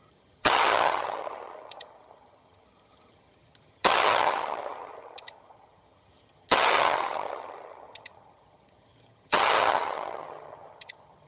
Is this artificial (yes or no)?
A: yes